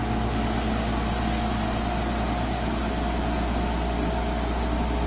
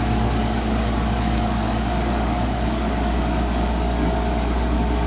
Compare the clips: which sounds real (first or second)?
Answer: first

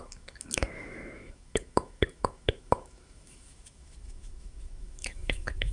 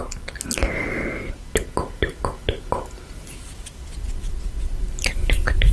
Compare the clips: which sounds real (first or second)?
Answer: second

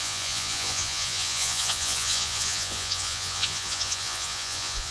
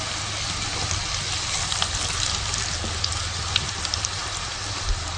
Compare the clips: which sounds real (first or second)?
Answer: second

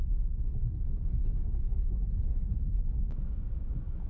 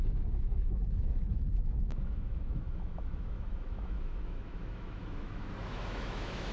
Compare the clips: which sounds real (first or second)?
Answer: first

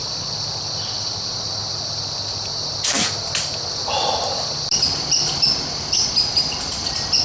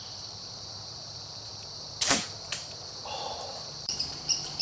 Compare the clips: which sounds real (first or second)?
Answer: first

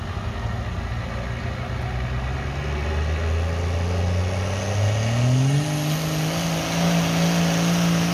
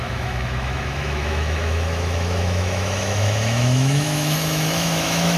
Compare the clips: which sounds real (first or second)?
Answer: first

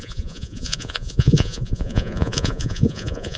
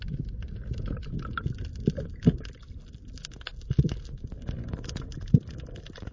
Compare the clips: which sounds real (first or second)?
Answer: second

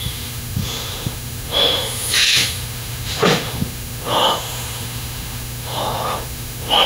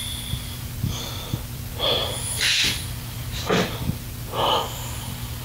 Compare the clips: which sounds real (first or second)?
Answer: second